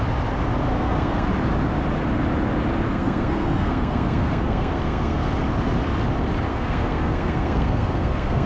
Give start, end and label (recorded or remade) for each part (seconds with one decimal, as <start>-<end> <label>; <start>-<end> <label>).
0.0-0.7 recorded; 0.7-1.3 remade; 1.3-2.9 recorded; 2.9-5.3 remade; 5.3-6.5 recorded; 6.5-8.5 remade